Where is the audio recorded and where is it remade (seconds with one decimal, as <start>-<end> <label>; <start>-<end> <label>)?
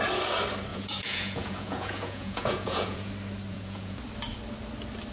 0.0-0.7 recorded; 0.7-3.1 remade; 3.1-3.5 recorded; 3.5-4.0 remade; 4.0-5.1 recorded